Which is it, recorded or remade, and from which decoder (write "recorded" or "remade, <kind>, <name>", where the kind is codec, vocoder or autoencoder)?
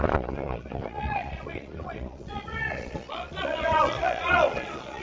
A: remade, vocoder, Vocos